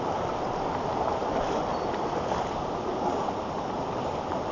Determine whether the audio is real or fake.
real